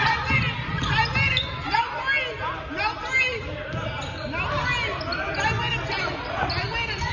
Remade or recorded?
recorded